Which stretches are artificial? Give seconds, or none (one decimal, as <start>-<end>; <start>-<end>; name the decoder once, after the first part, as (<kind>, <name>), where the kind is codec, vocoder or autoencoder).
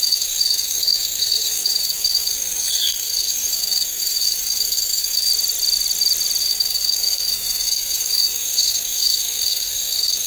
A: 0.0-5.3 (codec, SNAC); 6.4-10.3